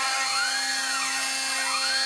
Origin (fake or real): real